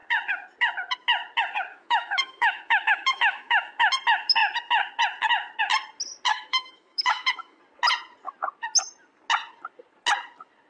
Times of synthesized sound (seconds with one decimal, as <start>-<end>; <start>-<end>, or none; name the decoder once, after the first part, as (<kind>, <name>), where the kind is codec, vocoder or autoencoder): 1.7-3.9 (autoencoder, DAC-VAE); 6.3-7.6